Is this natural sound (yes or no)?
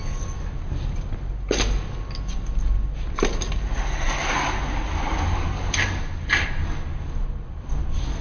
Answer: yes